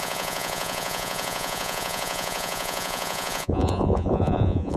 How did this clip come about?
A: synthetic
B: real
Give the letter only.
A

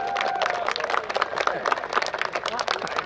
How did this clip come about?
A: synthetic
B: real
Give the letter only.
B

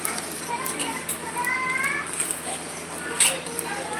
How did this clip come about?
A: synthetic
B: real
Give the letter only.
B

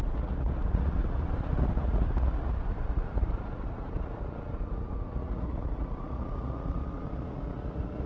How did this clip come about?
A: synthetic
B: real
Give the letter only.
A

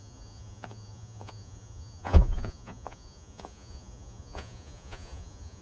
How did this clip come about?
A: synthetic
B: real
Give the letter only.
A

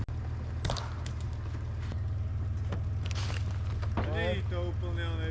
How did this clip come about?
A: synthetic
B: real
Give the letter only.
B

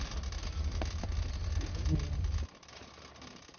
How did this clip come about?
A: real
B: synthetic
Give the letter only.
A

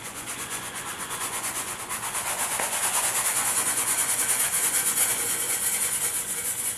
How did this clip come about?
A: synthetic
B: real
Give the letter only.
A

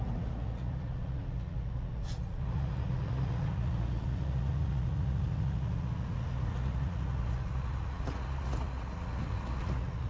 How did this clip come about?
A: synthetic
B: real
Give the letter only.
A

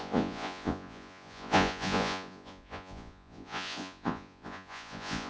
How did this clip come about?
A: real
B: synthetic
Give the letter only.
B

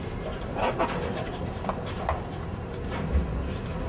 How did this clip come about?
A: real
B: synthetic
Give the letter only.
A